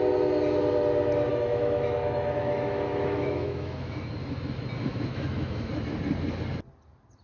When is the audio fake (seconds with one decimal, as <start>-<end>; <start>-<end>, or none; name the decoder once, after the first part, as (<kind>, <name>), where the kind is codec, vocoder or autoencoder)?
1.3-4.1 (autoencoder, DAC-VAE); 4.9-5.7